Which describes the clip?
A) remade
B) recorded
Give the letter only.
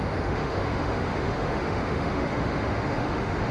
A